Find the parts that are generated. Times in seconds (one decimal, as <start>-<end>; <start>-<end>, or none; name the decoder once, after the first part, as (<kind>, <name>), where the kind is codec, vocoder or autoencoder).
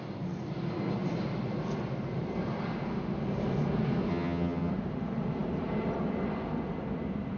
4.1-4.7 (vocoder, HiFi-GAN)